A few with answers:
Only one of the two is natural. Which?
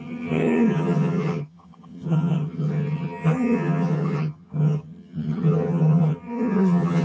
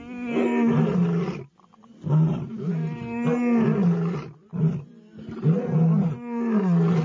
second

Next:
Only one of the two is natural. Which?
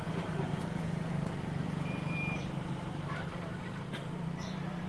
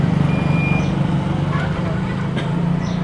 second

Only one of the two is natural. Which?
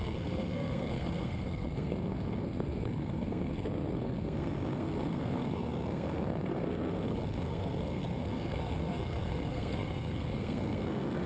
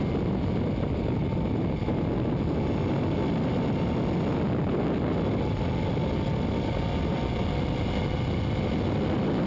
second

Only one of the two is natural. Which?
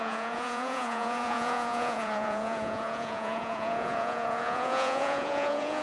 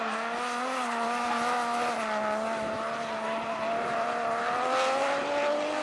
second